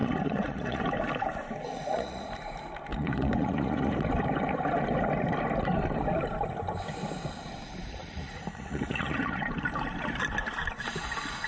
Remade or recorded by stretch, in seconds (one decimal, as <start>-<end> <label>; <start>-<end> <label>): 0.0-0.8 remade; 0.8-1.7 recorded; 1.7-2.3 remade; 2.3-2.9 recorded; 2.9-4.1 remade; 4.1-8.0 recorded; 8.0-9.4 remade; 9.4-11.5 recorded